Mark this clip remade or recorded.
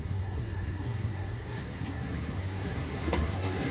remade